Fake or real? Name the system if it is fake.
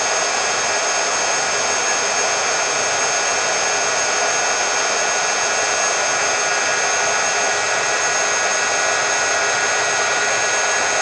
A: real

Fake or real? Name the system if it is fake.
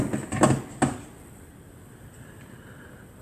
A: real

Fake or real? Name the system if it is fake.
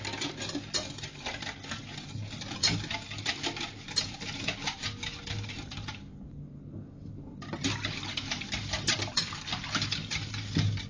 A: real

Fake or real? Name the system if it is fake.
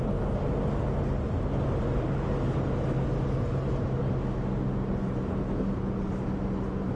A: real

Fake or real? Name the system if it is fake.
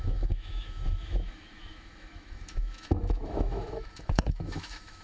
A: fake, autoencoder, DAC-VAE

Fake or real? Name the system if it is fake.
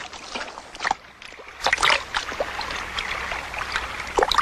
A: real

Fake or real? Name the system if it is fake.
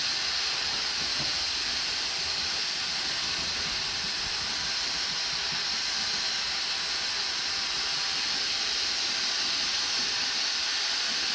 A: real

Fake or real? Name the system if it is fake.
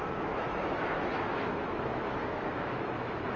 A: fake, autoencoder, DAC-VAE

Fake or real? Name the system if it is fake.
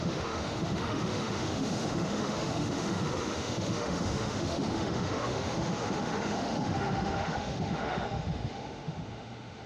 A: fake, autoencoder, DAC-VAE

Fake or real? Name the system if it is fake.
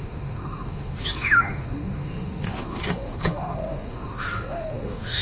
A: fake, autoencoder, DAC-VAE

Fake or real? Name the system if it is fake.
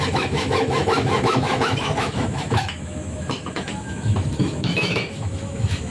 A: fake, autoencoder, DAC-VAE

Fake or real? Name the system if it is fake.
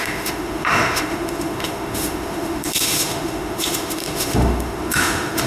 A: fake, autoencoder, DAC-VAE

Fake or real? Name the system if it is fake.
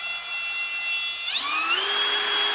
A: real